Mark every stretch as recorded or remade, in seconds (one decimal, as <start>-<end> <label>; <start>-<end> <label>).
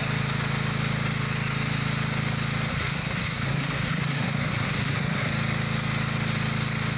0.0-2.7 recorded; 2.7-5.3 remade; 5.3-7.0 recorded